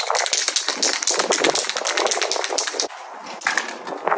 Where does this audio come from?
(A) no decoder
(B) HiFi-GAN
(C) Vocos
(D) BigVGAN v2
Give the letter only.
A